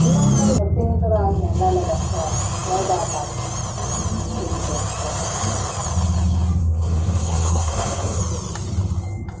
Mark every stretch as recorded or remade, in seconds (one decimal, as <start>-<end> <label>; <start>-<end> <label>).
0.0-6.6 recorded; 6.6-8.2 remade; 8.2-9.4 recorded